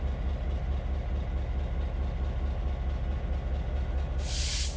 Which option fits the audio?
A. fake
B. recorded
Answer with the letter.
B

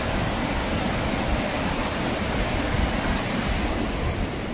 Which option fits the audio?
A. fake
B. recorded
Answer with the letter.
B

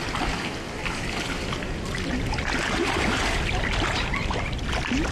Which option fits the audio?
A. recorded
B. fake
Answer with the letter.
A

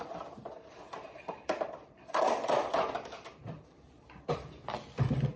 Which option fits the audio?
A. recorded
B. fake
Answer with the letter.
B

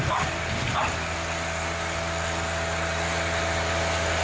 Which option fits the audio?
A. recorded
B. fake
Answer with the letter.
A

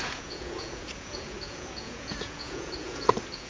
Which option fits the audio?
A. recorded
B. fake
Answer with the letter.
B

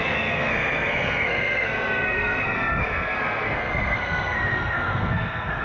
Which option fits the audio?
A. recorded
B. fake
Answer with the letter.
B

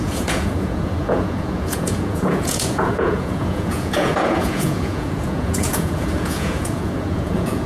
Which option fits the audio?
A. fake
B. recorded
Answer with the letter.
A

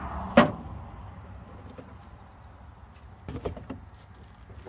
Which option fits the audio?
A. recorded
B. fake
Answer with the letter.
A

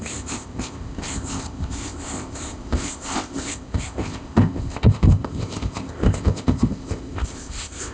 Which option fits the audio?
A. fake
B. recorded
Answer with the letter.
A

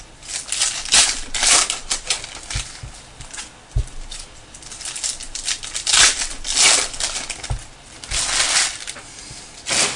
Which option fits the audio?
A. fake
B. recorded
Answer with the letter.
B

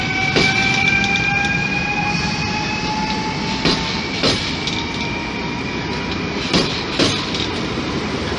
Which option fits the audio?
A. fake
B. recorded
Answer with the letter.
B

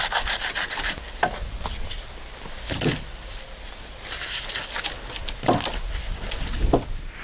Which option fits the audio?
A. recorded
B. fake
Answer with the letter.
A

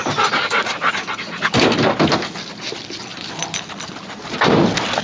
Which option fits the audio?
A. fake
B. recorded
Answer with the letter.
B